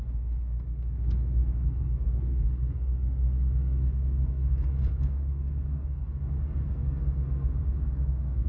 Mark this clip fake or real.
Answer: fake